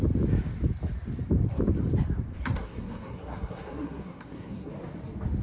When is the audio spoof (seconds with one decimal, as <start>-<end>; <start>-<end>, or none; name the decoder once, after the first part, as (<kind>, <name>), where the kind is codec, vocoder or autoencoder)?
2.3-4.7 (codec, SNAC)